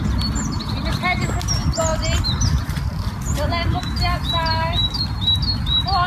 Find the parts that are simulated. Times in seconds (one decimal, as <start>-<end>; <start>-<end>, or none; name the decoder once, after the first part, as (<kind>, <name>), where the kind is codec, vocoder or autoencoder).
none